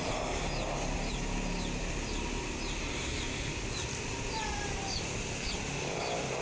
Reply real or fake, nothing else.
real